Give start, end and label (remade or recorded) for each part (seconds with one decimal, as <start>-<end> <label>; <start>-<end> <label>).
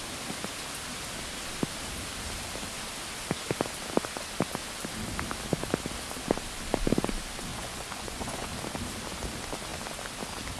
0.0-7.5 recorded; 7.5-8.5 remade; 8.5-10.6 recorded